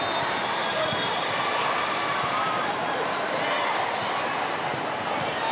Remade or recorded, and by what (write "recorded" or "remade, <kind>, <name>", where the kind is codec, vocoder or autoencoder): recorded